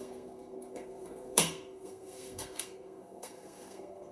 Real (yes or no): no